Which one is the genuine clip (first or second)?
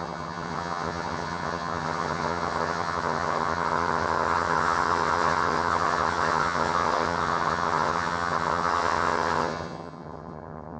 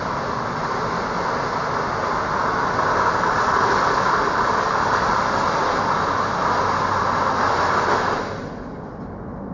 second